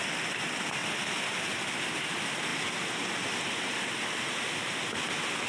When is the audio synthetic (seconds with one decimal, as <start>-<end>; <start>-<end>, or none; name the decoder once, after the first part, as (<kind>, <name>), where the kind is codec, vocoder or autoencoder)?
none